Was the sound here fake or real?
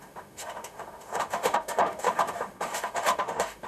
fake